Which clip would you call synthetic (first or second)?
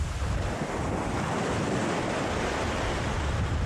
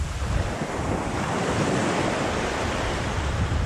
second